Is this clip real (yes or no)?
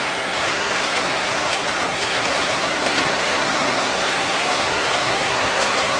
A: no